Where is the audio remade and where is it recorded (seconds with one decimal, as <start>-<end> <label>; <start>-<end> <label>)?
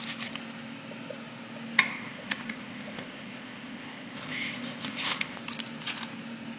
0.0-1.9 recorded; 1.9-5.4 remade; 5.4-6.6 recorded